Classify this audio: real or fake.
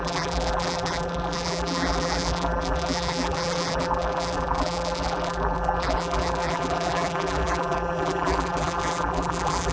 fake